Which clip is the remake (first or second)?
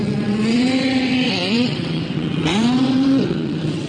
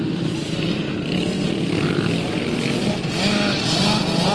first